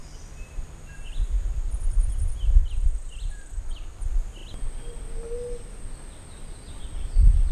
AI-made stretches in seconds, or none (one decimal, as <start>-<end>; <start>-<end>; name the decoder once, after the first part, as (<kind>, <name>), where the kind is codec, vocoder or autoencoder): 0.0-2.1 (vocoder, BigVGAN v2); 2.6-4.0